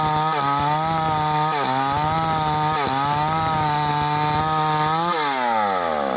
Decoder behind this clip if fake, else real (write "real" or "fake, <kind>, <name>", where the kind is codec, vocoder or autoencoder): real